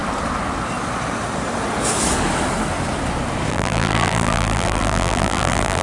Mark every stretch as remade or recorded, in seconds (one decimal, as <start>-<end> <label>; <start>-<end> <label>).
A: 0.0-3.5 recorded; 3.5-5.8 remade